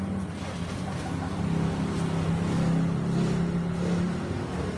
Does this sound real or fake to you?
real